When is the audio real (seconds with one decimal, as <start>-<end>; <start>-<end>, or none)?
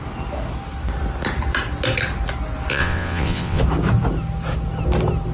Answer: 0.0-2.7; 3.6-5.3